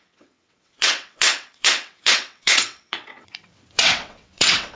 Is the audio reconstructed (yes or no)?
yes